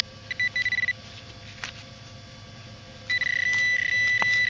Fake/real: real